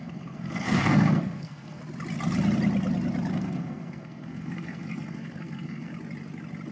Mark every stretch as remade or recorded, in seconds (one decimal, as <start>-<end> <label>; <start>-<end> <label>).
0.0-1.8 remade; 1.8-3.3 recorded; 3.3-5.9 remade; 5.9-6.7 recorded

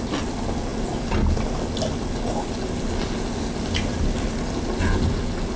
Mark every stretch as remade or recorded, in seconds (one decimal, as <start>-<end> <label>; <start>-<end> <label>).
0.0-5.6 recorded

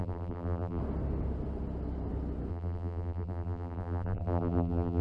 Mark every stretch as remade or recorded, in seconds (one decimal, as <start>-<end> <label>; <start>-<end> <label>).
0.0-0.8 remade; 0.8-2.5 recorded; 2.5-5.0 remade

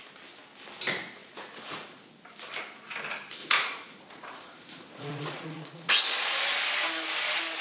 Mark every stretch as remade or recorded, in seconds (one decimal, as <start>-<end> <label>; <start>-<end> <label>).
0.0-1.2 recorded; 1.2-2.1 remade; 2.1-3.4 recorded; 3.4-5.9 remade; 5.9-7.6 recorded